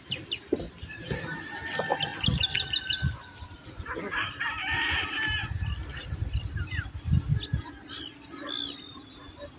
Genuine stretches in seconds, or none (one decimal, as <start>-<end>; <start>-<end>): 0.0-9.6